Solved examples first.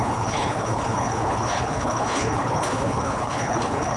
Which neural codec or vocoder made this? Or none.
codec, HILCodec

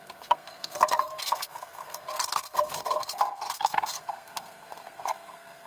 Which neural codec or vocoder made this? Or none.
codec, SNAC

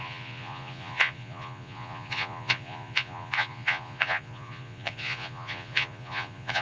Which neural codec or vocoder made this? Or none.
vocoder, Vocos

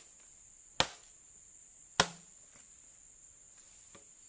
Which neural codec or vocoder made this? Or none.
none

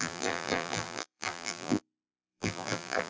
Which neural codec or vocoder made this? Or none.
vocoder, BigVGAN v2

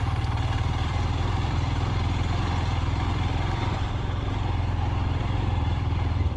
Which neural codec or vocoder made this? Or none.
vocoder, BigVGAN v2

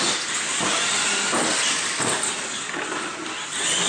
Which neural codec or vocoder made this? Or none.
none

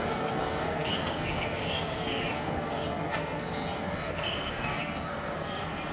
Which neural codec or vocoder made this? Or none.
codec, SNAC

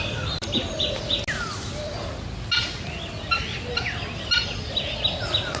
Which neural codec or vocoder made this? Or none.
none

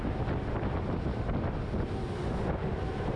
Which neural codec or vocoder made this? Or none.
none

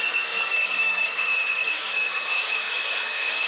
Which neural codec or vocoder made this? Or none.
codec, SNAC